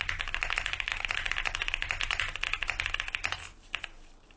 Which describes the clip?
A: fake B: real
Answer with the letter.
B